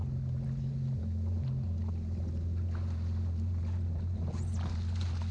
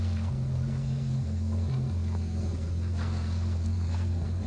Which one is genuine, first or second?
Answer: first